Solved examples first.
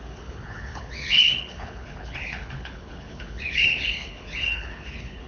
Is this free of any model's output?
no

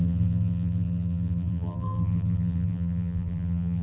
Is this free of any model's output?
no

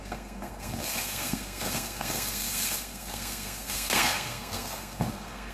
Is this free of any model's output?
no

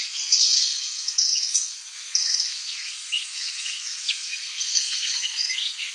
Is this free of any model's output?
no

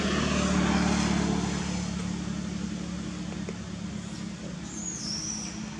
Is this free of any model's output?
yes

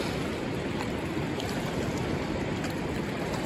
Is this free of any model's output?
no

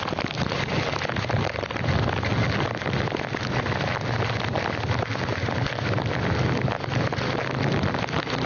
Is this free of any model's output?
yes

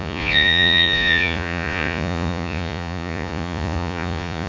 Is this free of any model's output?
no